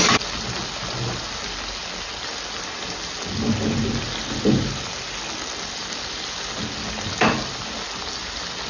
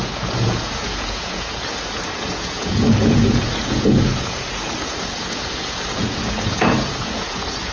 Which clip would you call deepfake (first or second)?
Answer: second